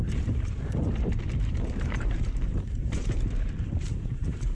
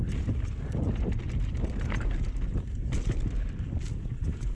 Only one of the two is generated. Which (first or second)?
first